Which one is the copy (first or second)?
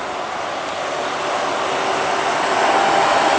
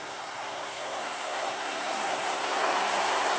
second